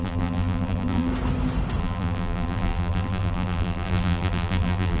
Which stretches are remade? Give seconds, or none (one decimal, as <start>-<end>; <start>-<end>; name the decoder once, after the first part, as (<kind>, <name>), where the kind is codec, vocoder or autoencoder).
0.0-1.1 (vocoder, BigVGAN v2); 1.8-5.0